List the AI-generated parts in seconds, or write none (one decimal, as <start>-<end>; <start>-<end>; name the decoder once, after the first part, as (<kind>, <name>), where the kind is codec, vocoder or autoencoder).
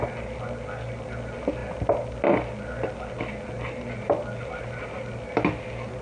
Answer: none